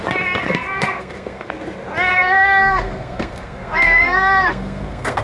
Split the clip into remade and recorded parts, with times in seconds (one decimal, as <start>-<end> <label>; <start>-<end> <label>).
0.0-0.4 recorded; 0.4-1.5 remade; 1.5-2.1 recorded; 2.1-5.2 remade